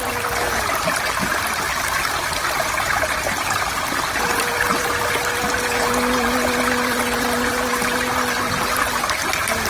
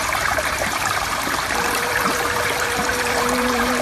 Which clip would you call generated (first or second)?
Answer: second